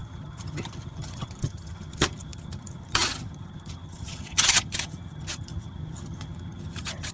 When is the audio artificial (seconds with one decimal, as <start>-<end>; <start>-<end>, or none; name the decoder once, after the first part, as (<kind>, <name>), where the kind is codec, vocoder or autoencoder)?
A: 0.0-7.1 (vocoder, HiFi-GAN)